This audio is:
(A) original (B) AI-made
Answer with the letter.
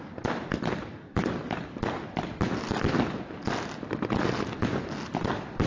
A